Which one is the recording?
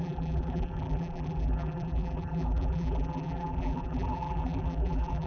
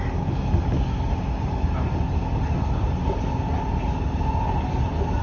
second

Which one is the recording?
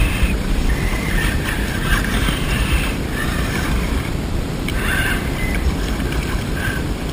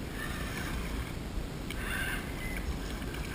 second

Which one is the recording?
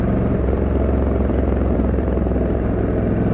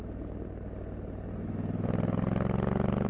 second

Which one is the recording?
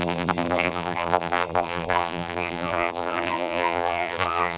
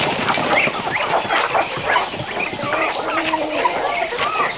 second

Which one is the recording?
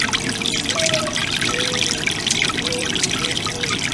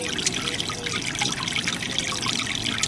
second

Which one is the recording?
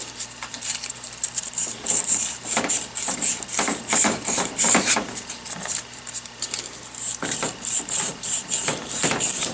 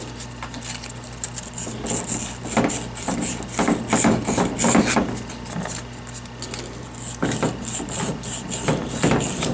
second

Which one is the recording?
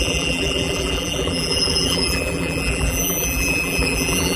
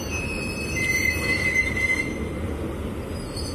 second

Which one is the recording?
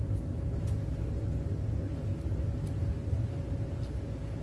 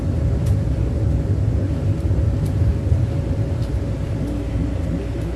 first